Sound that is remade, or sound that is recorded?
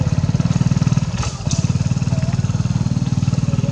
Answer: recorded